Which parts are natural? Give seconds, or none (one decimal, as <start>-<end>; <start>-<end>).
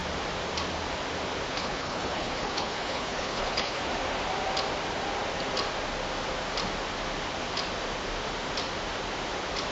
0.0-1.5; 3.8-9.7